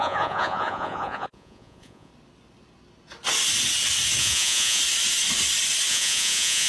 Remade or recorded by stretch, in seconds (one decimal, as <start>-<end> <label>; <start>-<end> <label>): 0.0-2.1 remade; 2.1-4.2 recorded; 4.2-4.8 remade; 4.8-5.9 recorded; 5.9-6.7 remade

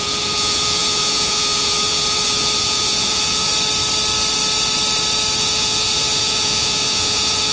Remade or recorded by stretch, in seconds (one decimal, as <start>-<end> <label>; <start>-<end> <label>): 0.0-3.5 remade; 3.5-5.4 recorded; 5.4-7.5 remade

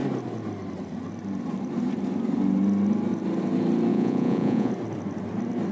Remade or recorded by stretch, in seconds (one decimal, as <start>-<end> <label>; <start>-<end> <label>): 0.0-3.9 recorded; 3.9-4.7 remade; 4.7-5.7 recorded

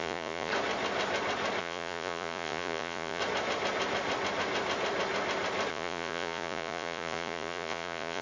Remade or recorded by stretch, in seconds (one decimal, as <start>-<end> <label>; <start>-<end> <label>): 0.0-0.5 remade; 0.5-1.6 recorded; 1.6-3.2 remade; 3.2-5.7 recorded; 5.7-8.2 remade

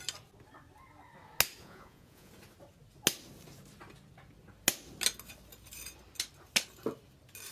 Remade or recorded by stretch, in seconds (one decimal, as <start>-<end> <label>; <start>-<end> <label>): 0.0-1.6 recorded; 1.6-2.3 remade; 2.3-7.5 recorded